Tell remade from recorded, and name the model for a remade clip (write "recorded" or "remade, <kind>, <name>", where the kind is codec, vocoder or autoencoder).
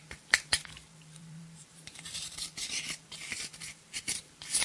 remade, vocoder, BigVGAN v2